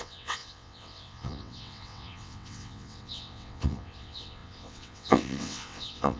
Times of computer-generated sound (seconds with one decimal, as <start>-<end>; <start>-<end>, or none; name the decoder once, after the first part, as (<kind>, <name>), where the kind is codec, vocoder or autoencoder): 0.0-6.2 (vocoder, WaveNeXt)